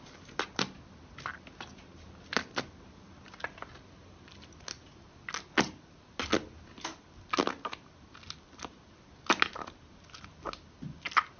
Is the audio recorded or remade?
recorded